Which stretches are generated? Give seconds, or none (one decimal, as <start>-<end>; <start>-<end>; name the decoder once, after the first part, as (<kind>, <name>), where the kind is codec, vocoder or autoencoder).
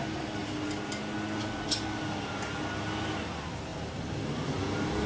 none